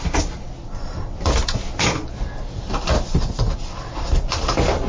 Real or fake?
real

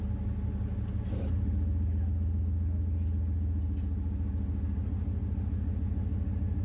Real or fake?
real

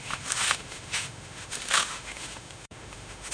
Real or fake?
fake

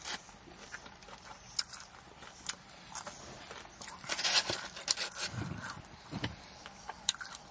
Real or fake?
fake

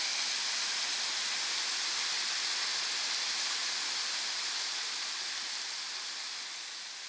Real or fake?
real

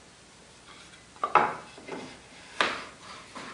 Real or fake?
real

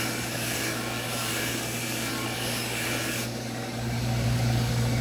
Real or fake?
fake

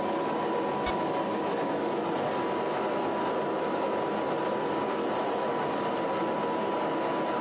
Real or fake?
real